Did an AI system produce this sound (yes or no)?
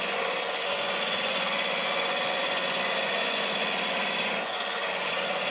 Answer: yes